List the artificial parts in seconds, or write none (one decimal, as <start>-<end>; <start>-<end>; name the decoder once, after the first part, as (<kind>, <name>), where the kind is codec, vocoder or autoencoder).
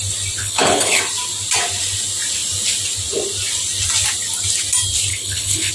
0.4-1.0 (codec, HILCodec); 5.1-5.7